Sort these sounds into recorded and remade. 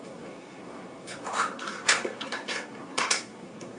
remade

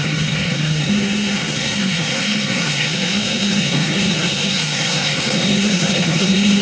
remade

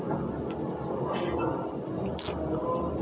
recorded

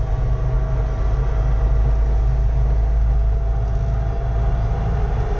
recorded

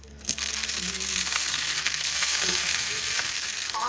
remade